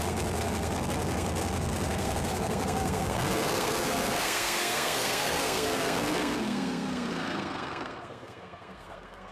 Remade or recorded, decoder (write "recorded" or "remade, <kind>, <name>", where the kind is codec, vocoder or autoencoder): remade, codec, SNAC